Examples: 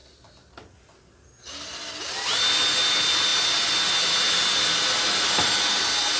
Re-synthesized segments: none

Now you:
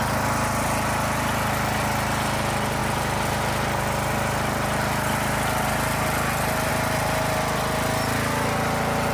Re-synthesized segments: 2.8-6.7 (vocoder, BigVGAN v2)

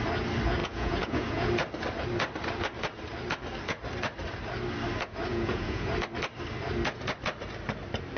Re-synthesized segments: 0.6-1.5 (vocoder, Vocos); 5.3-5.9

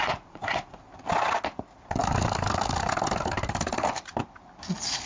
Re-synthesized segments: 0.0-0.8 (vocoder, Vocos)

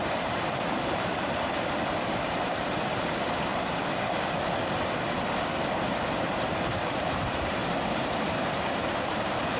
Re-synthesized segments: 0.0-3.5 (vocoder, BigVGAN v2); 6.3-7.6; 9.0-9.6